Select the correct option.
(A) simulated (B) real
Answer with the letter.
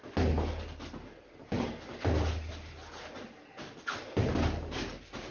B